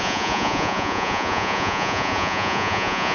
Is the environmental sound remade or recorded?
remade